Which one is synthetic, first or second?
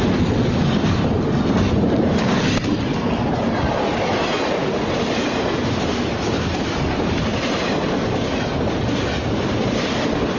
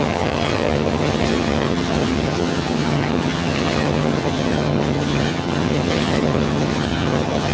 second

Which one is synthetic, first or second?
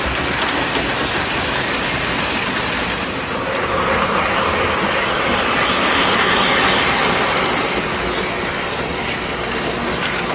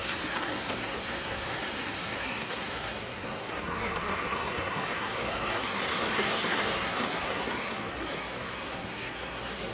second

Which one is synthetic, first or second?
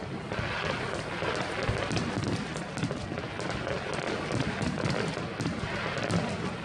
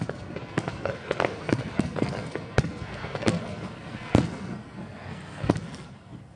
second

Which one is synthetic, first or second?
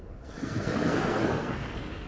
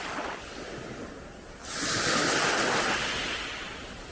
first